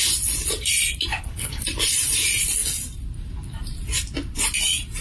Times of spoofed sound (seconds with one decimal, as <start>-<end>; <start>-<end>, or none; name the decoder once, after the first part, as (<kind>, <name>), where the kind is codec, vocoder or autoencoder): 1.1-1.6 (codec, HILCodec)